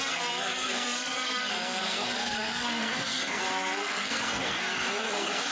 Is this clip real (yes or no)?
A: no